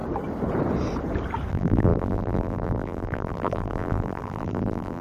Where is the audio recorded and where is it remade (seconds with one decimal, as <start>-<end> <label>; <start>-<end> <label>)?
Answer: 0.0-1.5 recorded; 1.5-5.0 remade